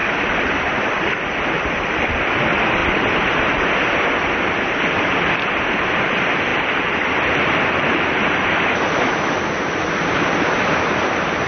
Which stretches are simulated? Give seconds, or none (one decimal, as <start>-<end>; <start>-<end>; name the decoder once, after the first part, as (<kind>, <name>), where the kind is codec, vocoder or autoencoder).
0.0-11.5 (vocoder, BigVGAN v2)

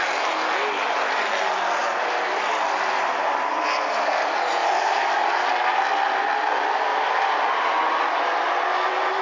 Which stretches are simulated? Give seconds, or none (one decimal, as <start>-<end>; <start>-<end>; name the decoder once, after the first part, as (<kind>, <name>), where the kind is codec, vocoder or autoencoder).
1.8-3.5 (vocoder, BigVGAN v2); 6.9-7.5

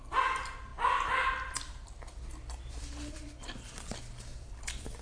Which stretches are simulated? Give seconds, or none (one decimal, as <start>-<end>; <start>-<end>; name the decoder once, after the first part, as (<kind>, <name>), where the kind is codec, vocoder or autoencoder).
4.3-5.0 (vocoder, BigVGAN v2)

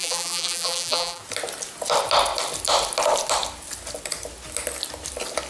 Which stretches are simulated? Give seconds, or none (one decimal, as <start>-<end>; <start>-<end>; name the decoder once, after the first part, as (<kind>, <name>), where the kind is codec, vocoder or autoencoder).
0.0-1.2 (vocoder, BigVGAN v2)